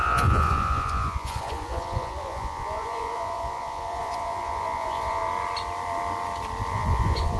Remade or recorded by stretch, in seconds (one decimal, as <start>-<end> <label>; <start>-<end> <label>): 0.0-5.2 remade; 5.2-6.7 recorded; 6.7-7.4 remade